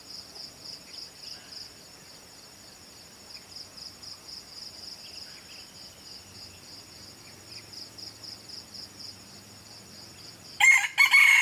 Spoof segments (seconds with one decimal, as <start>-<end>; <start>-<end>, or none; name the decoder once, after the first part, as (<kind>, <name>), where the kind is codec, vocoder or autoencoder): none